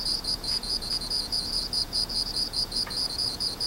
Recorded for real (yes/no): no